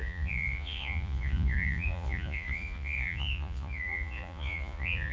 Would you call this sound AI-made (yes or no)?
yes